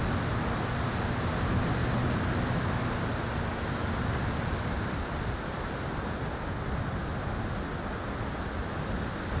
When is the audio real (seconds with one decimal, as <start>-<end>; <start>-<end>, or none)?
0.0-9.4